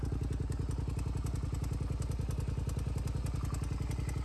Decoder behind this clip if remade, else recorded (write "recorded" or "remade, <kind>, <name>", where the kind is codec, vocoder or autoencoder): recorded